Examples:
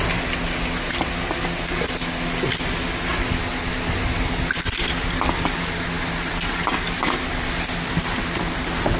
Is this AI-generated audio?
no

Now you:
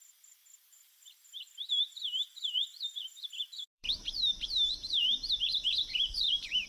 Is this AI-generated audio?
yes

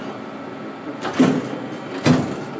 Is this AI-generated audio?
no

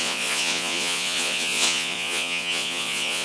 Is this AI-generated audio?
yes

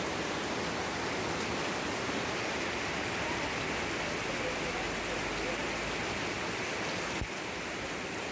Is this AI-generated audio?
no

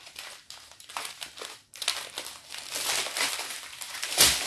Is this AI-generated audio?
no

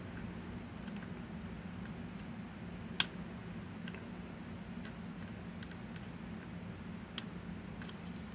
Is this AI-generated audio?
no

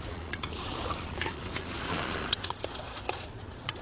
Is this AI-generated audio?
yes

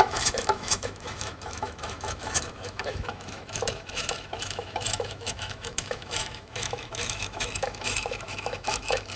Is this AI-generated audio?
yes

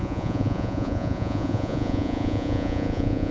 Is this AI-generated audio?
yes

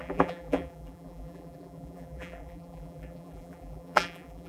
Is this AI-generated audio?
yes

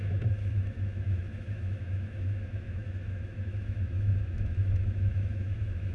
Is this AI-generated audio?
yes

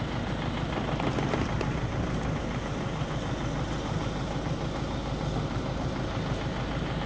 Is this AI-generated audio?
no